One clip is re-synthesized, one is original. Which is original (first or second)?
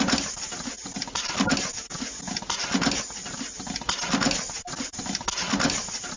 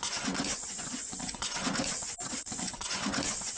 first